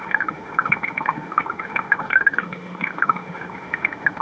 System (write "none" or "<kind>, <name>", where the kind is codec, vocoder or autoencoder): autoencoder, DAC-VAE